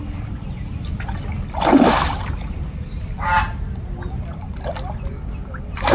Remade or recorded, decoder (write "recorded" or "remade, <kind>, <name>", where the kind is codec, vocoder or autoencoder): recorded